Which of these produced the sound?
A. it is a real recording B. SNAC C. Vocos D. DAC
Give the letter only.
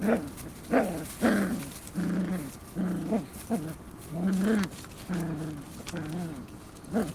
A